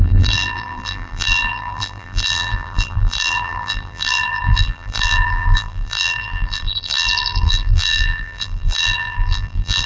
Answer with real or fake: fake